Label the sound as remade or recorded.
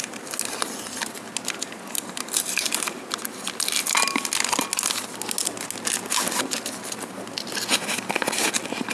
recorded